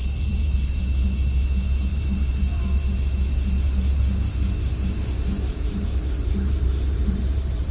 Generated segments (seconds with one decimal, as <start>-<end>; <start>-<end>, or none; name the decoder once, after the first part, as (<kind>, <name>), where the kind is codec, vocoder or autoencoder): 0.0-0.8 (vocoder, BigVGAN v2); 1.9-2.8; 4.7-7.7